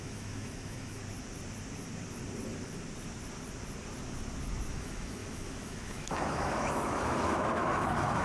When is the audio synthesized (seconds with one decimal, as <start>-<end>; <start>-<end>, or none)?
0.0-1.0; 4.7-8.2